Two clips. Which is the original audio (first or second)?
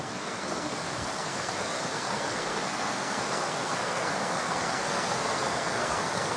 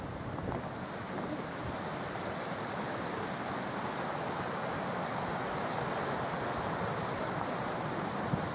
second